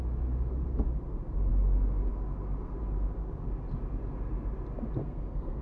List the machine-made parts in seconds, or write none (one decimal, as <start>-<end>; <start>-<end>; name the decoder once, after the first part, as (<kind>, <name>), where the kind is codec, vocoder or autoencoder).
5.0-5.6 (codec, SNAC)